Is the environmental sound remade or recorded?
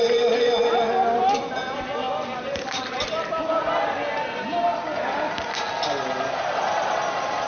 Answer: recorded